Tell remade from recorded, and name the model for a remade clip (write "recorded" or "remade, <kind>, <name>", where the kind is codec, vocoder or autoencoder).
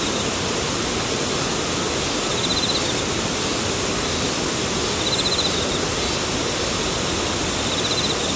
recorded